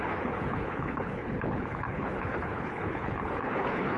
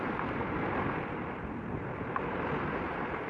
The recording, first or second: second